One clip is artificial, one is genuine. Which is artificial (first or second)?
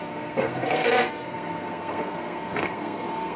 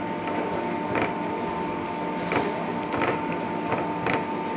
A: first